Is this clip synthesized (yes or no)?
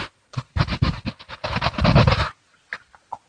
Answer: no